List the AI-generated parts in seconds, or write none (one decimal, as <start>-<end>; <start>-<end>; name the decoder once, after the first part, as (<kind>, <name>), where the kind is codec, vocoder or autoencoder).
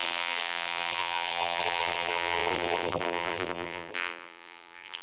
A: 0.0-5.0 (vocoder, BigVGAN v2)